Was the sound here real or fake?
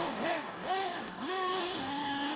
fake